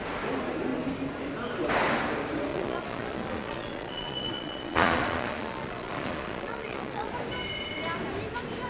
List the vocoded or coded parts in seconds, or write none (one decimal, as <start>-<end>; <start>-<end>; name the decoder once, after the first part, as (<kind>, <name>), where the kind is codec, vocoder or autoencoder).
2.5-7.1 (vocoder, Vocos)